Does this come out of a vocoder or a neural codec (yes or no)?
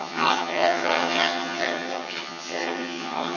yes